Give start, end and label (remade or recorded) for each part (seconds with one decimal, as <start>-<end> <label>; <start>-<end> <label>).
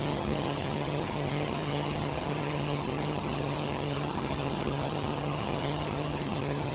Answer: 0.0-6.7 remade